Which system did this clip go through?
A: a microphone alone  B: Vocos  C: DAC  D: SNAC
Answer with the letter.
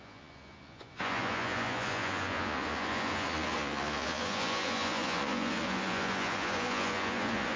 B